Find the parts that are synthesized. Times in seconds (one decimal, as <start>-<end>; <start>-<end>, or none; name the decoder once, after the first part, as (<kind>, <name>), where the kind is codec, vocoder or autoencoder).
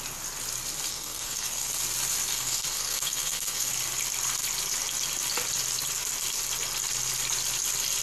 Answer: 0.9-1.7 (codec, SNAC); 2.3-3.7